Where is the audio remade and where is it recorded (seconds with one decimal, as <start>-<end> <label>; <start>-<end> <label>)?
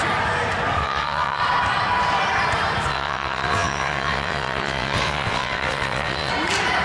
0.0-0.8 recorded; 0.8-1.4 remade; 1.4-2.9 recorded; 2.9-6.3 remade; 6.3-6.8 recorded